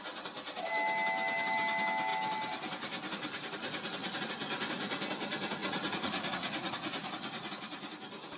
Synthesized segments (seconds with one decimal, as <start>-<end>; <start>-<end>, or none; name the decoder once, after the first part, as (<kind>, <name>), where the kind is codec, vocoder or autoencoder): 5.6-7.5 (vocoder, Vocos)